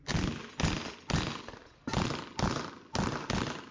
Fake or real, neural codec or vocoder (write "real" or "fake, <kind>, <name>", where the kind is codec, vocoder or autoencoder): real